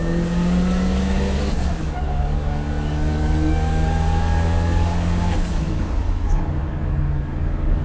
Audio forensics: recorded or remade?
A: remade